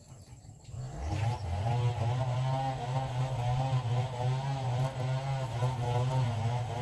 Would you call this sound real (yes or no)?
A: yes